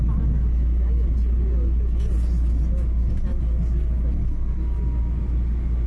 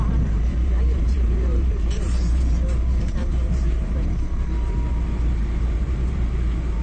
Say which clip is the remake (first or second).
second